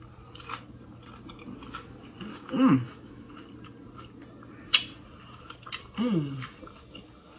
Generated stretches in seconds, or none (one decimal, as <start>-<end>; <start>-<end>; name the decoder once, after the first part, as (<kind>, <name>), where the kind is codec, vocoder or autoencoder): 2.3-3.3 (autoencoder, DAC-VAE)